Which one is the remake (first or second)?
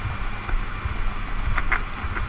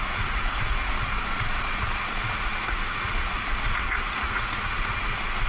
second